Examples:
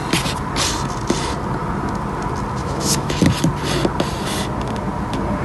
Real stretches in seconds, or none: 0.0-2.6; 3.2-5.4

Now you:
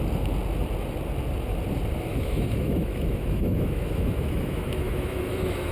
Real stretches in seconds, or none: 0.0-2.1